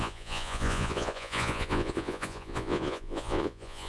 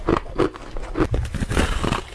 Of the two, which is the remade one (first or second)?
first